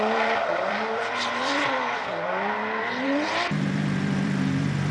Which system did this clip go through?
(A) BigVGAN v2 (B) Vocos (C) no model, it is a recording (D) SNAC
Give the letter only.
A